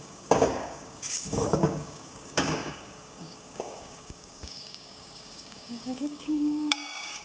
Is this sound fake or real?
fake